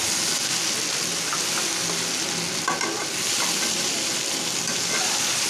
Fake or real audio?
real